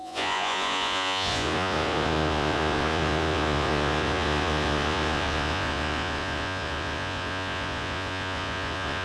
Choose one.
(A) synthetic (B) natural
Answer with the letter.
A